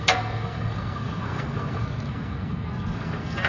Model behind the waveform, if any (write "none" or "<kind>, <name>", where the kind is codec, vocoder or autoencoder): codec, SNAC